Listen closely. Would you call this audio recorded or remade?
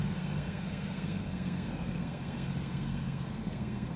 remade